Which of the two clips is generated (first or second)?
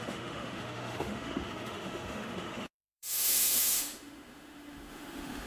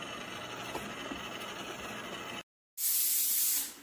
first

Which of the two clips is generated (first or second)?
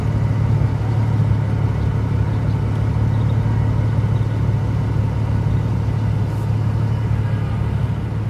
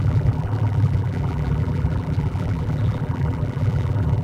second